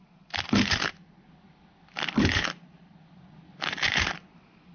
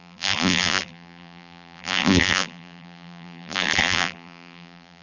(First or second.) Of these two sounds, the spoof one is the second